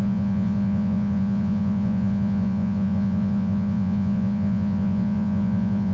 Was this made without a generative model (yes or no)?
no